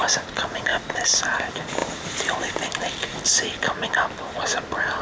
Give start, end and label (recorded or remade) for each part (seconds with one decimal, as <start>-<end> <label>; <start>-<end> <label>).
0.0-1.8 recorded; 1.8-2.4 remade; 2.4-5.0 recorded